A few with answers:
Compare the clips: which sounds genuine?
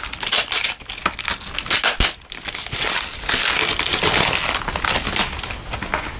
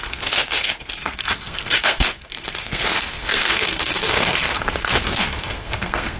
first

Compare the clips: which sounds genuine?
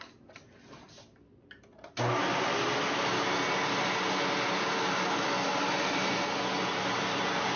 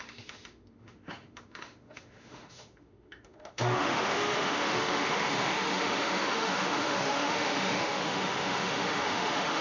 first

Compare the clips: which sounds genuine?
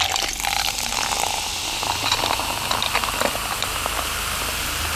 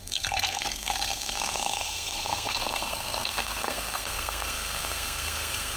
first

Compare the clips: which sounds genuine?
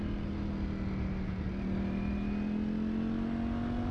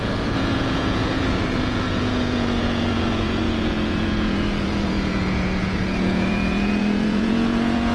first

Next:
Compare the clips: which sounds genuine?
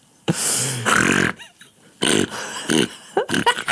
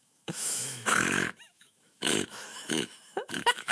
first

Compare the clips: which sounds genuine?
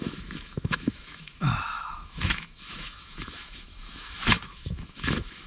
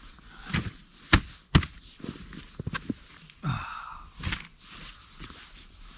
second